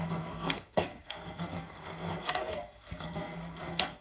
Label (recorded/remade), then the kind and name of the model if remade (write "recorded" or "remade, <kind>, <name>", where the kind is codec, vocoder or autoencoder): remade, codec, SNAC